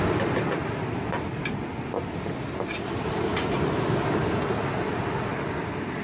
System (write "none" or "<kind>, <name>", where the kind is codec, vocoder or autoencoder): none